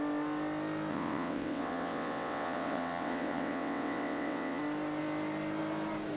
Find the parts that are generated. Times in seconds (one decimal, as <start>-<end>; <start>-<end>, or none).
0.9-4.6